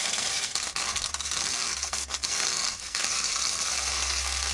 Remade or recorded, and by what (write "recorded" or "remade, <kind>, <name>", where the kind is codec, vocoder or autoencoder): remade, codec, SNAC